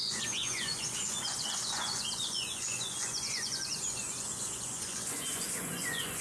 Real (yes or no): no